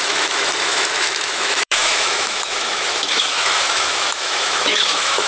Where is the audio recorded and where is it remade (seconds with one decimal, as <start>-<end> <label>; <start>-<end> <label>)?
0.0-5.3 remade